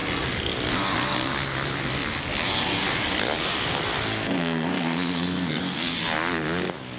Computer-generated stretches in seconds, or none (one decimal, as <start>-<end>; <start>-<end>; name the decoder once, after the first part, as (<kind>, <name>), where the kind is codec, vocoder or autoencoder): 4.1-5.6 (codec, SNAC)